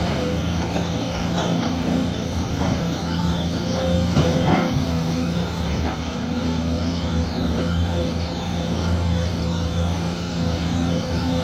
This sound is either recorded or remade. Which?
remade